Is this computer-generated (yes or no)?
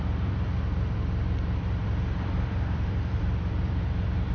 yes